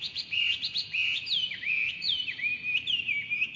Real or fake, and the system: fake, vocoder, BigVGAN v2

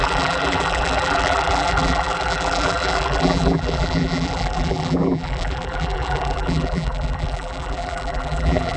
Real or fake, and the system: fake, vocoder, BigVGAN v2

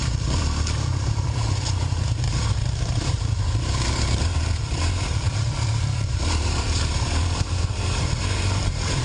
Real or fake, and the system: fake, vocoder, BigVGAN v2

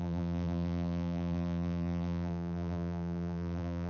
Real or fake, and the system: fake, vocoder, BigVGAN v2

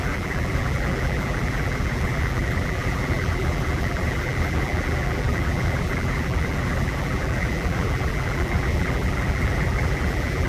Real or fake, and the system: fake, vocoder, BigVGAN v2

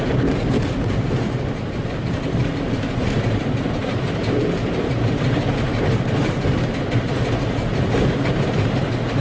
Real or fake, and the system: fake, vocoder, BigVGAN v2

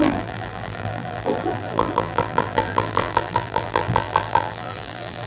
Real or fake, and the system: fake, vocoder, BigVGAN v2